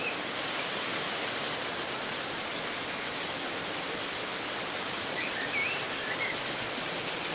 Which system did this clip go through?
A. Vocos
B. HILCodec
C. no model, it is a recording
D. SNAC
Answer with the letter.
C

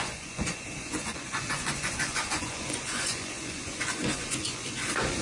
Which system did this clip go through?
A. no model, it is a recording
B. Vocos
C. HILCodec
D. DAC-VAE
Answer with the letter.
B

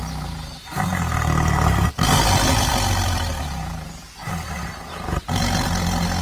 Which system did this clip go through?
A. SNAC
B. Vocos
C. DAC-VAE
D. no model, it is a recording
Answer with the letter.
D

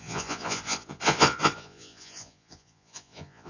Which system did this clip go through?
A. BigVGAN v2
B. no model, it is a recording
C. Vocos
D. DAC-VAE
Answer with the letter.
C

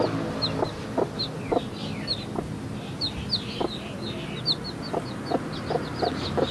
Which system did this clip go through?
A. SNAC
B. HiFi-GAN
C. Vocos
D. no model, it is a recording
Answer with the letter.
D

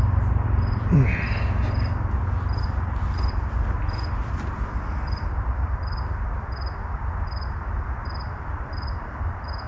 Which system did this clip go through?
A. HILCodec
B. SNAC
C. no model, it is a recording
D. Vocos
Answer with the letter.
C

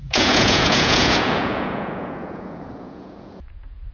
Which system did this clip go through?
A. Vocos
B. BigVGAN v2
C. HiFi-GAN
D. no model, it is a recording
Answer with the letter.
A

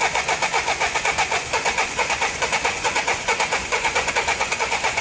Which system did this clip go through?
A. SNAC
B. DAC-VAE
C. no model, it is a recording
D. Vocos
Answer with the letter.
D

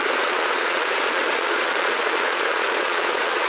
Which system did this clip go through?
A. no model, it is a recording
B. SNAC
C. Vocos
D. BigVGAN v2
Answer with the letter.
C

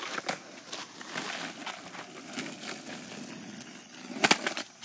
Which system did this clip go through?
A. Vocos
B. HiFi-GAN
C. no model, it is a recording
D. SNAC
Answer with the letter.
C